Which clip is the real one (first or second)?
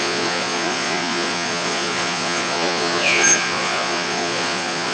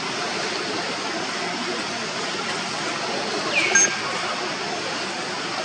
second